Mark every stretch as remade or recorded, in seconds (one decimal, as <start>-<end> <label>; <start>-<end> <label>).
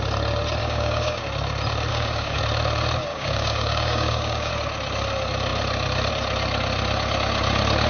0.0-0.6 recorded; 0.6-1.2 remade; 1.2-1.9 recorded; 1.9-2.4 remade; 2.4-3.1 recorded; 3.1-4.5 remade; 4.5-7.9 recorded